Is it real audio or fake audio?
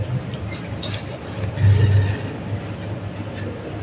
real